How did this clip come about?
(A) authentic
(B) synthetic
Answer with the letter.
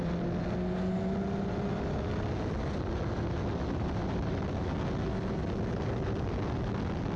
A